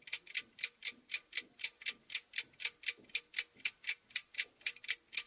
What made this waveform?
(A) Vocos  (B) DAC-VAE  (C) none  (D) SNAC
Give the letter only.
C